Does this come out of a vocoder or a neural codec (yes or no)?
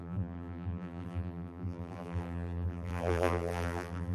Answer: yes